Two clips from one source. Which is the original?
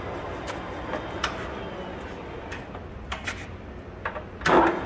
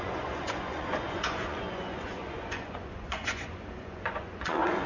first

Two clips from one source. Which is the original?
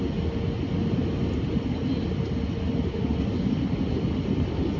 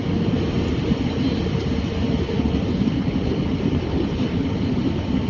first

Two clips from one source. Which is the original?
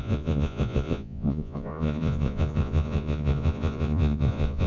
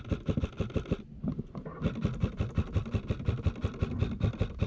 second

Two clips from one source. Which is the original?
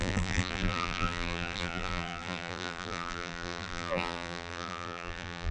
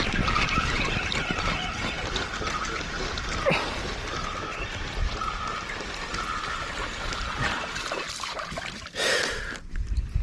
second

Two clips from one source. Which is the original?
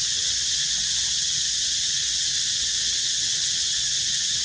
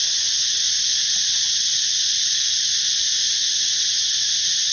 second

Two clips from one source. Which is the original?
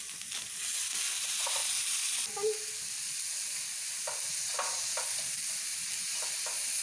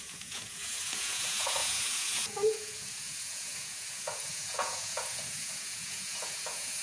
first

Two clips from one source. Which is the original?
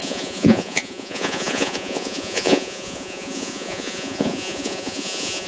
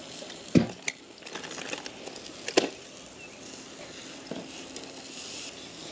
second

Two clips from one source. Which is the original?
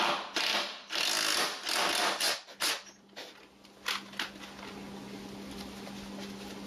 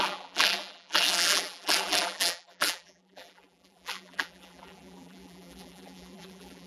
first